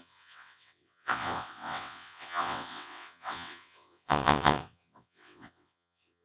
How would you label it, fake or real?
fake